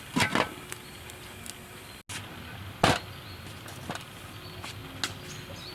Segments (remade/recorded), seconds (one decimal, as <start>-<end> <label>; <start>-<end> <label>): 0.0-5.7 recorded